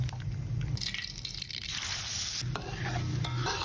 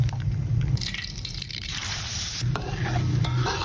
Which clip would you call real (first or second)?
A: first